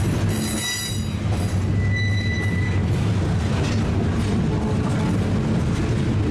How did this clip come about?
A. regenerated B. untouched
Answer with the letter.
B